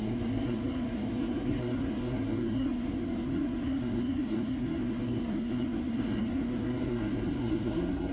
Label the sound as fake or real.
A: fake